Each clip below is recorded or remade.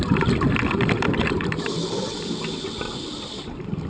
recorded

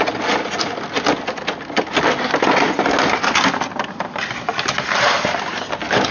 recorded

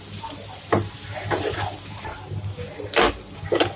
recorded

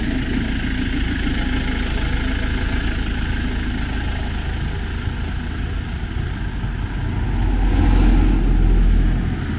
recorded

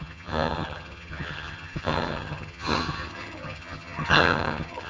remade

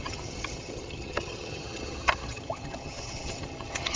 remade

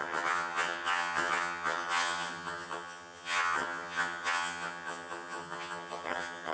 remade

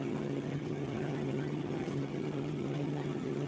remade